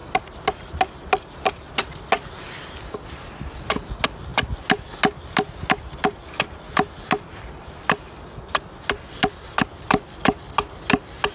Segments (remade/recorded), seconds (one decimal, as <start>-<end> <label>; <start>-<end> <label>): 0.0-11.3 recorded